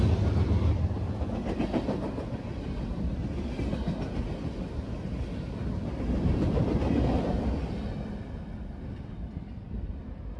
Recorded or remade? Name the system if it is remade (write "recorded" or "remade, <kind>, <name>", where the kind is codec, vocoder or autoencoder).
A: recorded